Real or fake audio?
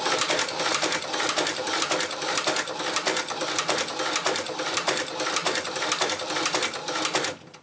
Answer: real